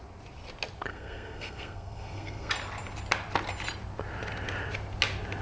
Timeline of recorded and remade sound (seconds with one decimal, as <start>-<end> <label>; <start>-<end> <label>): 0.0-0.9 recorded; 0.9-2.5 remade; 2.5-5.4 recorded